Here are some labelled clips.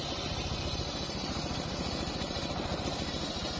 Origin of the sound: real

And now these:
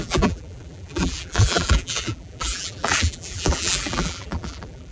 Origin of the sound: fake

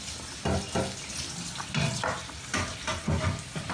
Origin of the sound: real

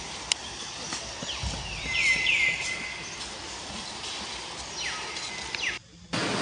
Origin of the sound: real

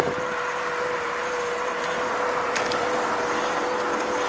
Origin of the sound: real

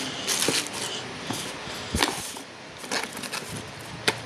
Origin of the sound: real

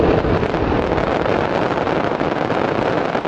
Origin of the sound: fake